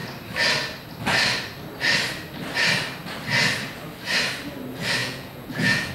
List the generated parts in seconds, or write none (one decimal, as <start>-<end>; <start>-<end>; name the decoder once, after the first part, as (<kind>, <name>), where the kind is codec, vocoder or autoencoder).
5.0-5.9 (vocoder, Vocos)